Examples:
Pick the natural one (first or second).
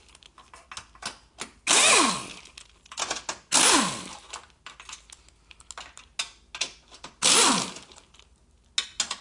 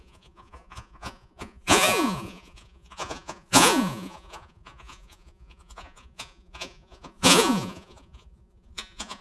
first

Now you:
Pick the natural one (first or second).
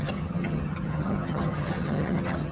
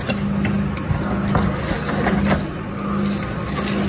second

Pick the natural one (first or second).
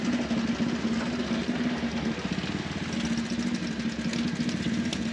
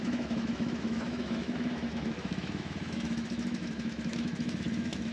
first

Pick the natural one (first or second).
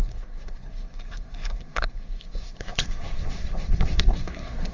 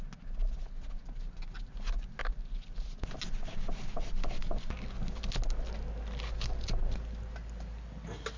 second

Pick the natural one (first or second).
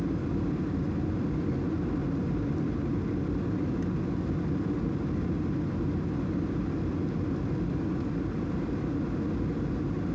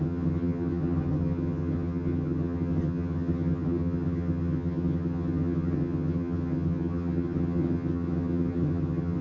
first